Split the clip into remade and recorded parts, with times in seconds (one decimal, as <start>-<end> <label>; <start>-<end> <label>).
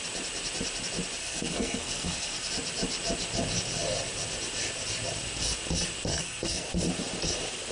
0.0-1.2 recorded; 1.2-2.5 remade; 2.5-6.1 recorded; 6.1-6.7 remade; 6.7-7.7 recorded